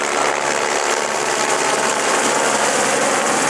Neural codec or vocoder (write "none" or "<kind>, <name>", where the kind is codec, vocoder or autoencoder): none